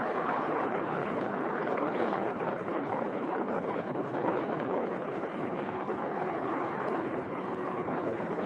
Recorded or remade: remade